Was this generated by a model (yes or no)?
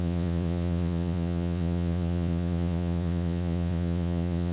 yes